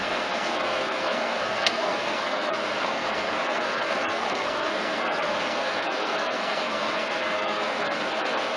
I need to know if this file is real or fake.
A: fake